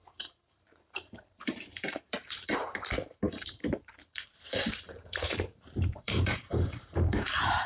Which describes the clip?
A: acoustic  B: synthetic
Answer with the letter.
B